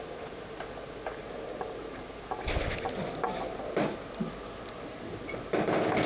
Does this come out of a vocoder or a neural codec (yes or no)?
no